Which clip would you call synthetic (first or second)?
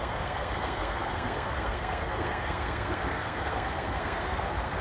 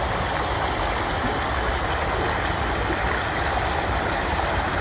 first